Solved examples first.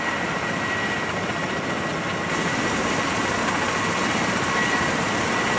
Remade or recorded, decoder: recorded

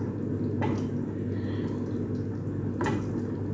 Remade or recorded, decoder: recorded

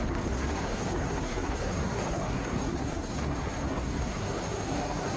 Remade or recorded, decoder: remade, codec, SNAC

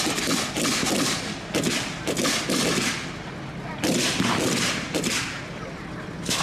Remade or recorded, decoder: recorded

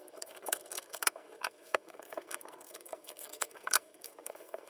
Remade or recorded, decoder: remade, codec, SNAC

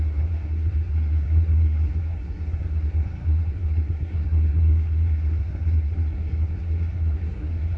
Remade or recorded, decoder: remade, codec, SNAC